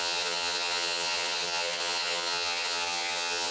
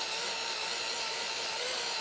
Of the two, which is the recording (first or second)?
second